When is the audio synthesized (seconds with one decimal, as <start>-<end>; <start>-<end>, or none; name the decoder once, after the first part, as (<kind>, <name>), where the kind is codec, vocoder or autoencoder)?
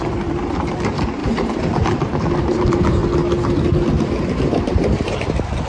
0.0-3.0 (vocoder, BigVGAN v2); 4.2-5.7